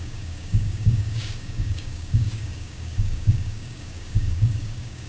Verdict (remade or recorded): remade